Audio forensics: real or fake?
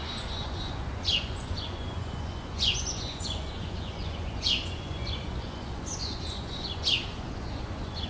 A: fake